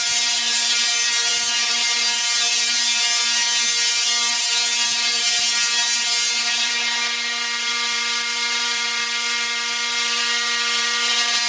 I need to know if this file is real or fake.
fake